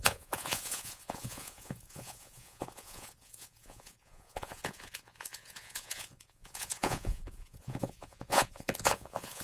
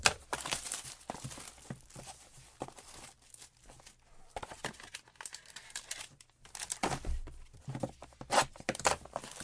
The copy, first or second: first